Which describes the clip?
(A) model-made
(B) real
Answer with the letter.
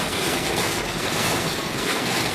A